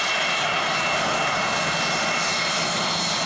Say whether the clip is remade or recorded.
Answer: recorded